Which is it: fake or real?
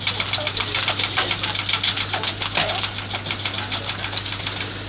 real